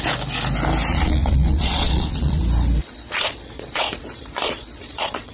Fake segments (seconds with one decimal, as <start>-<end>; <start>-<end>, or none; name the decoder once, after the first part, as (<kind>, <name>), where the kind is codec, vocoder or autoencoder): 0.9-2.4 (vocoder, Vocos); 2.8-5.3